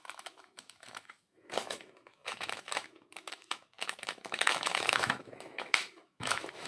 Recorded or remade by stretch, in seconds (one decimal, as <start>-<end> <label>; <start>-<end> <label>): 0.0-6.7 remade